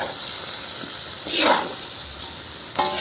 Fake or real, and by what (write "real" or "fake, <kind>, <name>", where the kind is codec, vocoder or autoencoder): real